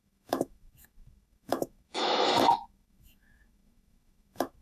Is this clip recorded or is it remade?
remade